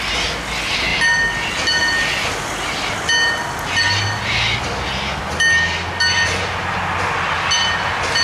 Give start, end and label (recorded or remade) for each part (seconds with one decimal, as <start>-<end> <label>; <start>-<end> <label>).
0.0-8.2 recorded

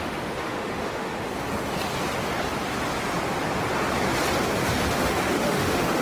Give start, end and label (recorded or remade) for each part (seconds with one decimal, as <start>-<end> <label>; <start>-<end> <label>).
0.0-1.3 remade; 1.3-4.9 recorded; 4.9-6.0 remade

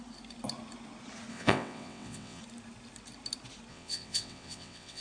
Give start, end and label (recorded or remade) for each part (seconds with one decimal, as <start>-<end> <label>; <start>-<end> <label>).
0.0-1.3 recorded; 1.3-2.4 remade; 2.4-3.7 recorded; 3.7-5.0 remade

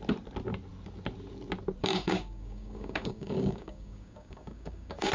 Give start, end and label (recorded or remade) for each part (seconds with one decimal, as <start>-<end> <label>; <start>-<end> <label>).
0.0-1.8 recorded; 1.8-5.1 remade

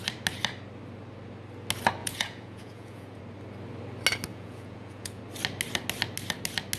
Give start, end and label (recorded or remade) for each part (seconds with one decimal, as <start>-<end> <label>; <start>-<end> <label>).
0.0-2.0 recorded; 2.0-3.2 remade; 3.2-4.3 recorded; 4.3-5.2 remade; 5.2-6.8 recorded